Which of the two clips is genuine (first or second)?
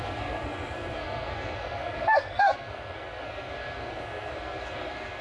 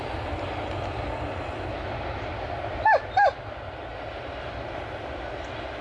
second